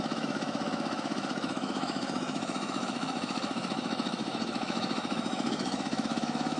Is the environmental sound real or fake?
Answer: fake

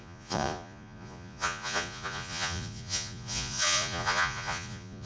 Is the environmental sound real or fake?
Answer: fake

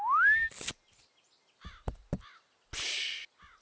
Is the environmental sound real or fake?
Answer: real